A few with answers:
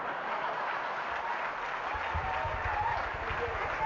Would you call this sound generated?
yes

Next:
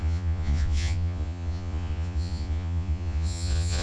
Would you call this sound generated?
yes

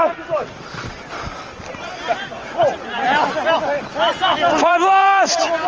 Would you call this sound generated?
yes